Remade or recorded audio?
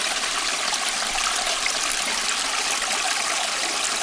recorded